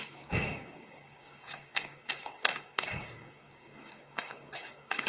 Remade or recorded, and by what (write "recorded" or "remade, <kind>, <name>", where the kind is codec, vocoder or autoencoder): remade, codec, DAC